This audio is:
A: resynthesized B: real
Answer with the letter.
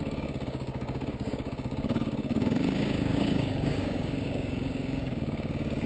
A